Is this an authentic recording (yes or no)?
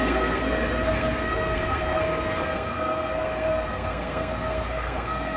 no